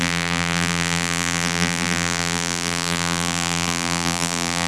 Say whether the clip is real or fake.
fake